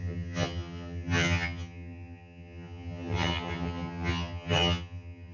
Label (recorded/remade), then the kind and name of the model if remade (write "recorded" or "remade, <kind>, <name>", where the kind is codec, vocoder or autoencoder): remade, vocoder, HiFi-GAN